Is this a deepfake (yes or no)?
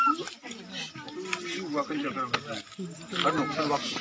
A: no